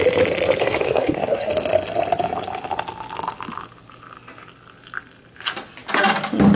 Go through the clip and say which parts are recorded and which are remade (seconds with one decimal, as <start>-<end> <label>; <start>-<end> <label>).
0.0-0.6 recorded; 0.6-1.5 remade; 1.5-6.6 recorded